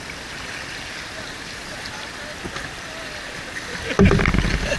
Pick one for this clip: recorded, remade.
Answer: recorded